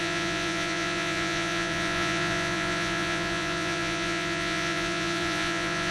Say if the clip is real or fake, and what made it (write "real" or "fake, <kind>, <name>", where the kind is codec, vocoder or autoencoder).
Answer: fake, vocoder, Vocos